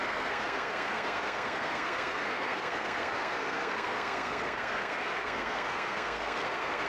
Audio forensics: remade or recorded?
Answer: remade